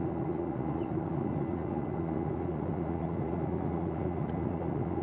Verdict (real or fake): fake